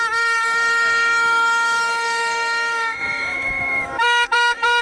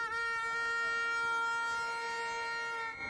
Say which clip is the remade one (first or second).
first